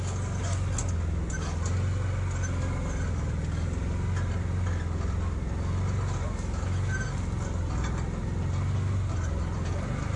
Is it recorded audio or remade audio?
recorded